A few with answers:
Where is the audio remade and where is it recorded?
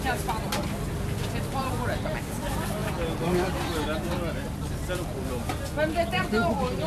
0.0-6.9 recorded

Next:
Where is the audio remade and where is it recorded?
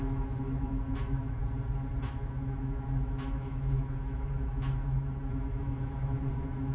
0.0-1.4 remade; 1.4-2.0 recorded; 2.0-6.7 remade